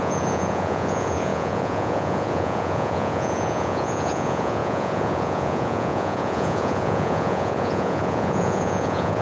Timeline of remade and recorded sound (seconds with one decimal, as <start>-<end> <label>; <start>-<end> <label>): 0.0-9.2 remade